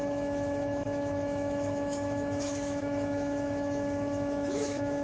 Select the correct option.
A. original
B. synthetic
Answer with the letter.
B